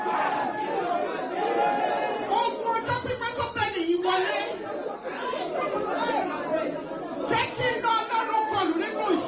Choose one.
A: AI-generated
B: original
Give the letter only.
B